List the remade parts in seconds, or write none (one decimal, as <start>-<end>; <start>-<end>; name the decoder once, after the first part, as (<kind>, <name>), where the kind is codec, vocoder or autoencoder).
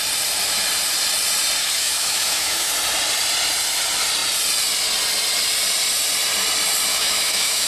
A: 1.6-2.7 (autoencoder, DAC-VAE); 6.9-7.7